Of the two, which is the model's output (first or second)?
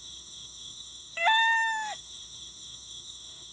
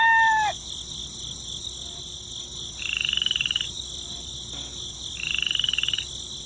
first